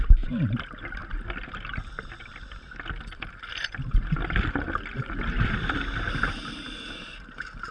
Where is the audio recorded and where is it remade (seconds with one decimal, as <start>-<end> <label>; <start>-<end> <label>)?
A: 0.0-7.7 recorded